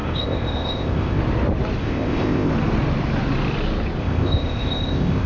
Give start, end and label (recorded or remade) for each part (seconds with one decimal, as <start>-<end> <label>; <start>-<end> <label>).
0.0-1.2 remade; 1.2-1.8 recorded; 1.8-2.5 remade; 2.5-4.0 recorded; 4.0-5.3 remade